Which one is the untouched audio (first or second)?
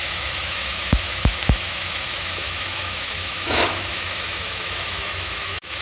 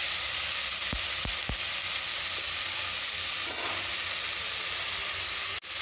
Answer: second